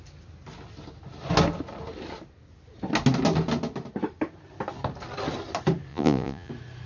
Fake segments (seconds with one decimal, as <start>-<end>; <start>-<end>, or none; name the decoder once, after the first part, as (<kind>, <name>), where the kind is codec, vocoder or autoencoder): 5.9-6.5 (vocoder, Vocos)